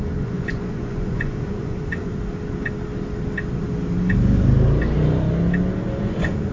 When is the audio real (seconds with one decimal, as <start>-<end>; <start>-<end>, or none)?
2.1-6.0